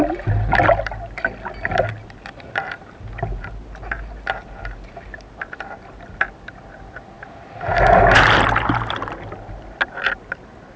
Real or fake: real